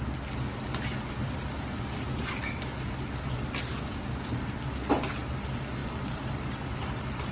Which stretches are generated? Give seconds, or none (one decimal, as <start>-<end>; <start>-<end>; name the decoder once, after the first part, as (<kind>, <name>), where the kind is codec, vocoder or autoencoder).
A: 1.2-2.3 (vocoder, BigVGAN v2); 5.8-7.3